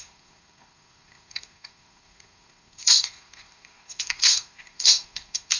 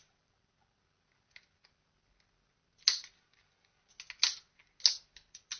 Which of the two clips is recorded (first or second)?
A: second